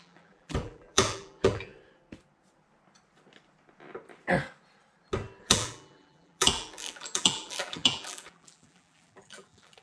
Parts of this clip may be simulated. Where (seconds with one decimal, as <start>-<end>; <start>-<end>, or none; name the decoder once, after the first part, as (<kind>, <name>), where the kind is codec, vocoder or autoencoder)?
0.0-1.7 (vocoder, BigVGAN v2); 5.4-9.8